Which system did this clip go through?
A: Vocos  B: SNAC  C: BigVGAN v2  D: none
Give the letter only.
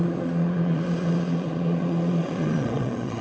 A